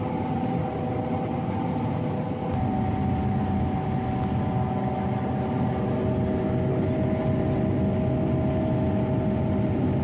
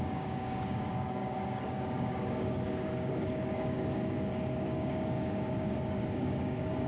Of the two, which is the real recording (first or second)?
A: first